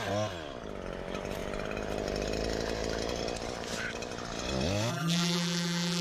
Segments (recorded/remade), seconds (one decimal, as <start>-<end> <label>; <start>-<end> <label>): 0.0-4.9 recorded; 4.9-6.0 remade